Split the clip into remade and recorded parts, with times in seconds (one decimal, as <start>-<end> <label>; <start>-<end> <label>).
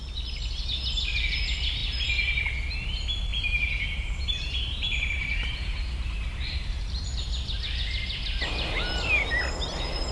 0.0-3.3 recorded; 3.3-7.2 remade; 7.2-10.1 recorded